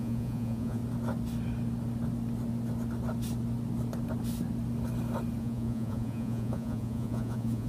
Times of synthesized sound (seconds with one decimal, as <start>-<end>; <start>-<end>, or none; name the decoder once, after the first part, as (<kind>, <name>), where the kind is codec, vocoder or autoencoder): 0.0-0.8 (vocoder, Vocos); 5.4-7.7